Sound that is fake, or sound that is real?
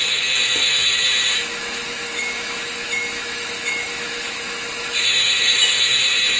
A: fake